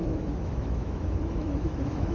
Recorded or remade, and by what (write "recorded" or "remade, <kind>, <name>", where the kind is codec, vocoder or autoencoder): remade, autoencoder, DAC-VAE